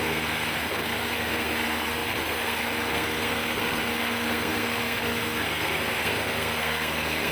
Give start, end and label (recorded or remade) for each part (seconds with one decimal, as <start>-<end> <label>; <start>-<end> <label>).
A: 0.0-7.3 remade